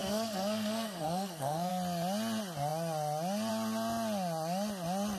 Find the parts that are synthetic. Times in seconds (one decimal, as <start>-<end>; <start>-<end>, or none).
0.0-1.7